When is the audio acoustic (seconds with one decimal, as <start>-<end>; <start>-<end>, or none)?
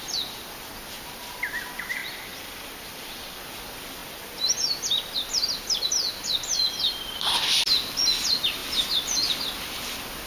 0.0-2.0; 3.4-10.3